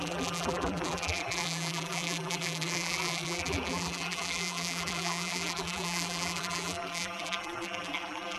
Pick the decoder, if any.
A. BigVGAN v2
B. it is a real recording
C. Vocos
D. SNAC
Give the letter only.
A